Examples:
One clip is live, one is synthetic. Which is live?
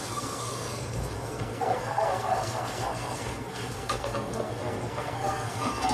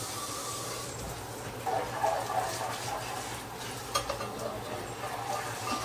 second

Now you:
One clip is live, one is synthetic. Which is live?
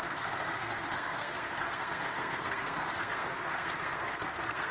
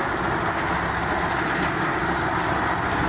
second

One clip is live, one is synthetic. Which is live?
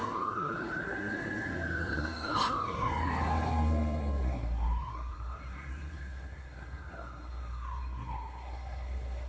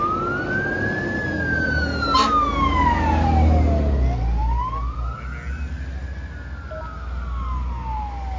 second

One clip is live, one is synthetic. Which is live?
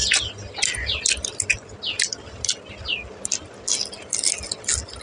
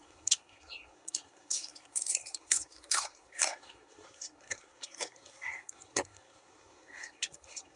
first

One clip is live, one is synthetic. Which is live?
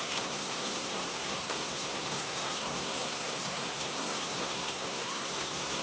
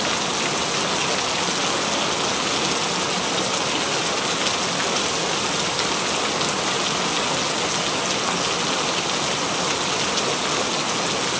second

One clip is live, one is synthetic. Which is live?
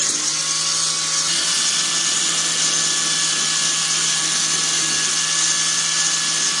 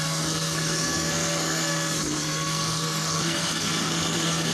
first